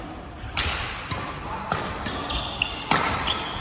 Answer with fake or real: real